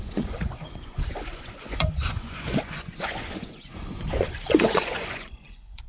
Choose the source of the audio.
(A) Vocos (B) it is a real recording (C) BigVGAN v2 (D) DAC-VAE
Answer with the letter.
A